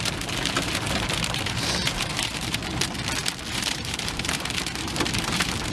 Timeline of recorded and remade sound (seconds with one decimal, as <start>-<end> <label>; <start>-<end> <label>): 0.0-2.6 remade; 2.6-3.5 recorded; 3.5-5.7 remade